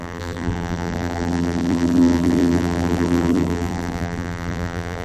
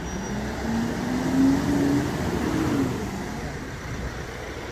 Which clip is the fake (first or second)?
first